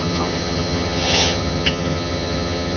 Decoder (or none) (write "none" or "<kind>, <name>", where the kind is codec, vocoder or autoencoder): vocoder, HiFi-GAN